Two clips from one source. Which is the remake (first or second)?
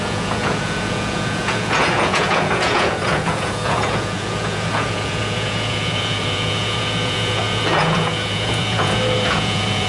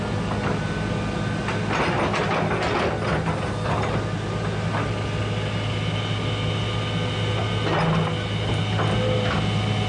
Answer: first